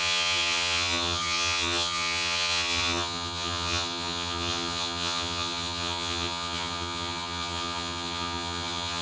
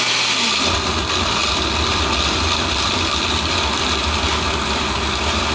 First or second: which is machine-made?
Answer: first